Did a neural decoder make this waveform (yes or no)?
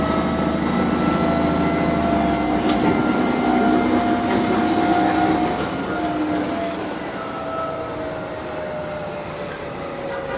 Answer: no